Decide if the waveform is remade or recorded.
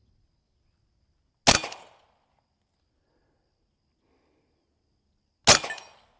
recorded